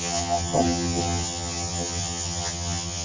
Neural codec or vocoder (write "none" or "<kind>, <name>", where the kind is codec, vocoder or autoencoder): vocoder, HiFi-GAN